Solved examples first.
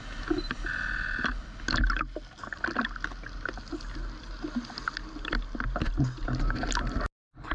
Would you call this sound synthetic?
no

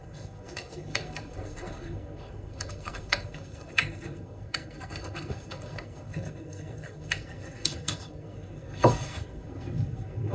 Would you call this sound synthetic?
yes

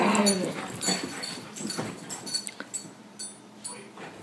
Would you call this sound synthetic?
no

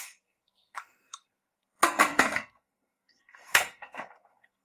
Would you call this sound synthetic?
yes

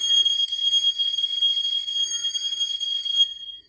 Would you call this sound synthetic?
yes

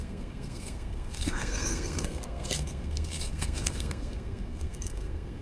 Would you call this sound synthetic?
yes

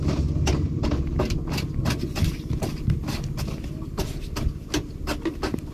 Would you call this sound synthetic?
no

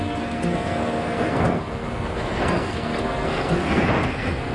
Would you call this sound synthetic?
yes